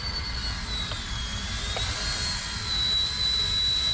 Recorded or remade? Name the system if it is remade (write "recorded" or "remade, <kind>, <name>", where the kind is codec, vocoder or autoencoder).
recorded